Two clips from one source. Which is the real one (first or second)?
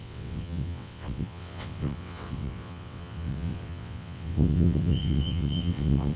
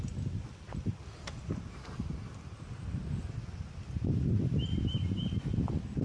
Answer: second